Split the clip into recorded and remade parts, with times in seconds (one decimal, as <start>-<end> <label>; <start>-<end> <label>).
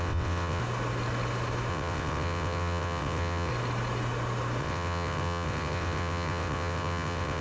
0.0-0.6 remade; 0.6-1.7 recorded; 1.7-3.5 remade; 3.5-4.6 recorded; 4.6-7.4 remade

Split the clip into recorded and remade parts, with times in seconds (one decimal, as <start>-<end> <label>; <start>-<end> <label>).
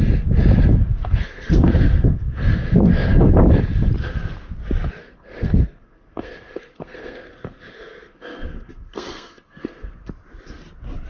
0.0-0.8 recorded; 0.8-3.3 remade; 3.3-5.0 recorded; 5.0-10.1 remade; 10.1-11.1 recorded